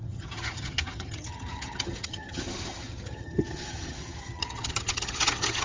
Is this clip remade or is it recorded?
remade